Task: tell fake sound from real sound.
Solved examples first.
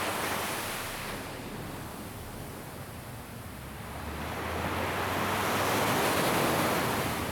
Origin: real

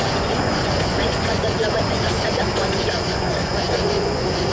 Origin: fake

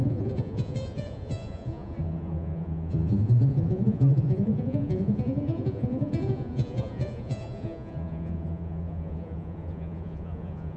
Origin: fake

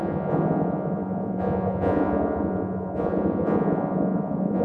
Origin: fake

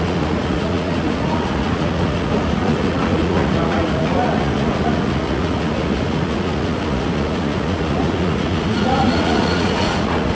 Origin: fake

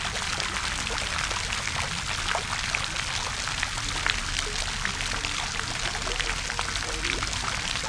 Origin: real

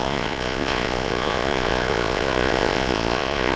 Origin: fake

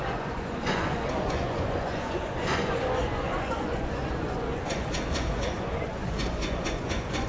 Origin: fake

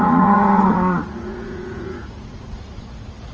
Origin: fake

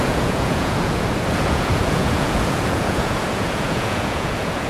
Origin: fake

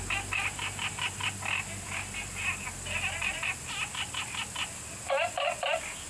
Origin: real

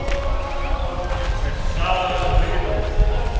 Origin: real